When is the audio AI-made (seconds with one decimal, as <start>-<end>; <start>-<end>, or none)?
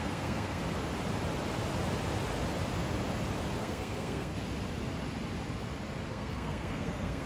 0.0-0.6; 3.6-4.3; 6.1-7.3